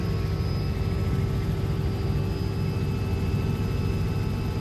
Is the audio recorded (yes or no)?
yes